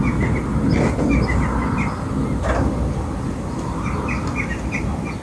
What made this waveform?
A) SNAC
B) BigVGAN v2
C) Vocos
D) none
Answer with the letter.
D